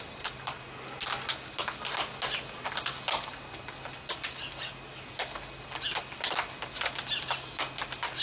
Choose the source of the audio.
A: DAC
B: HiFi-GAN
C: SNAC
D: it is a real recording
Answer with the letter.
D